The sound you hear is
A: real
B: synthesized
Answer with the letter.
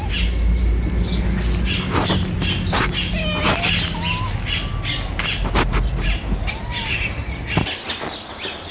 A